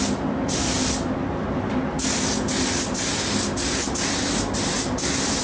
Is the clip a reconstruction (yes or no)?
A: no